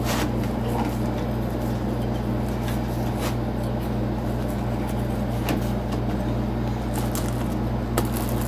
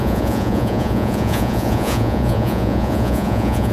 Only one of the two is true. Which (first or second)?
first